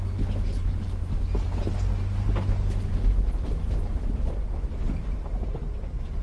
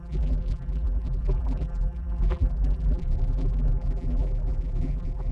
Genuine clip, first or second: first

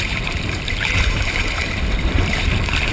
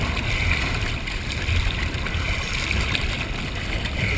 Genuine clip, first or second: second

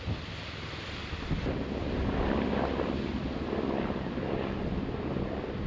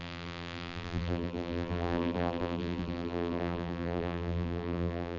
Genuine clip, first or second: first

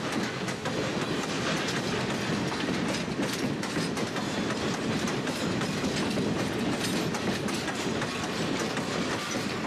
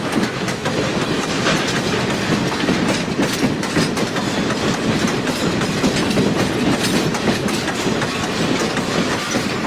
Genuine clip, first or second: first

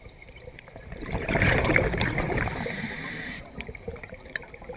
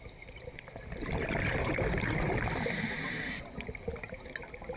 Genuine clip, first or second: second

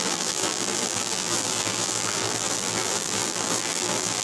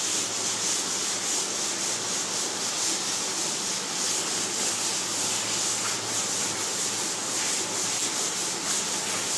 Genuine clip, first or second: second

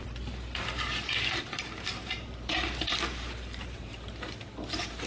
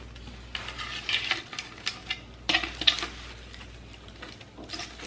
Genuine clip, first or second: second